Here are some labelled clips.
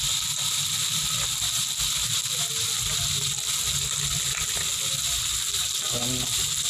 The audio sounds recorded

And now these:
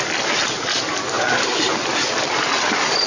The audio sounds recorded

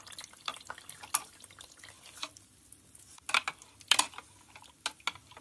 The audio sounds recorded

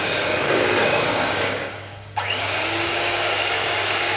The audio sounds remade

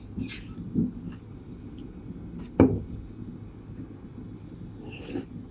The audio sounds recorded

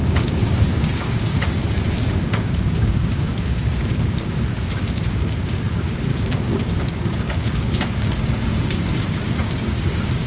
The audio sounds remade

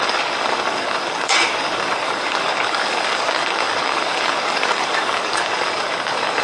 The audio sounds remade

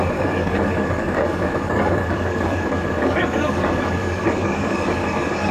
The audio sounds remade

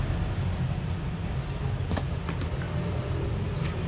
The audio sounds recorded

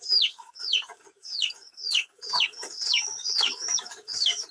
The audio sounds remade